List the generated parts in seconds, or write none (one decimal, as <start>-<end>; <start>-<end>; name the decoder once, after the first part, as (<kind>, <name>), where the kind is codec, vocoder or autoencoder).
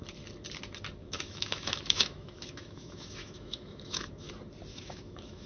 1.0-4.3 (autoencoder, DAC-VAE); 4.7-5.5